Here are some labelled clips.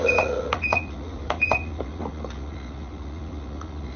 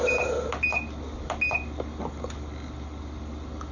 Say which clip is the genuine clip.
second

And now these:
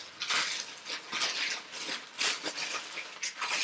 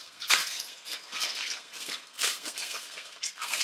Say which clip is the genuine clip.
first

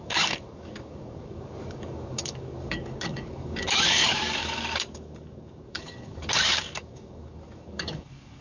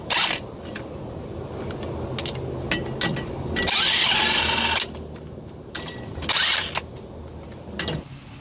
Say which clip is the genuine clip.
second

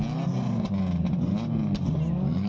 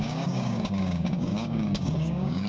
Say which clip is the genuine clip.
first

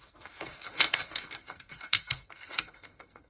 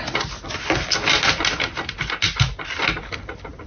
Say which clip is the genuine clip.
second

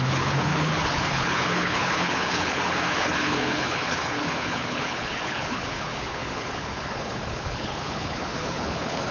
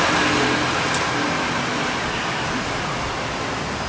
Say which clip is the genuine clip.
second